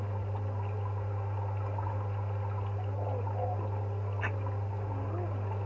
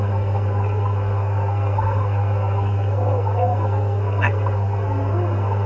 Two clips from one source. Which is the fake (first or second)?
second